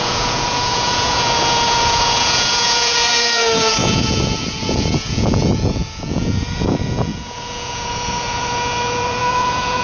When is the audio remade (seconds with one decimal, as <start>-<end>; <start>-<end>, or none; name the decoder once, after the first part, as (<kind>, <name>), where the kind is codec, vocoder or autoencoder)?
0.0-9.8 (vocoder, Vocos)